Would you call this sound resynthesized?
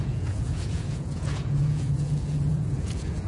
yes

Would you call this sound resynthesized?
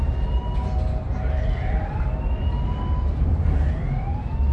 no